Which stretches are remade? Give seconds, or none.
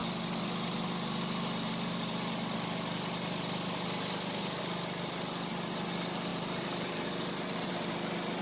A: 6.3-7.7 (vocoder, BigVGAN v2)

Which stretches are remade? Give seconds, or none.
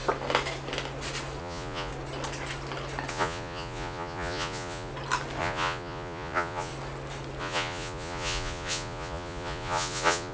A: 1.4-1.9 (vocoder, Vocos); 3.1-4.9; 5.4-6.7; 7.4-10.3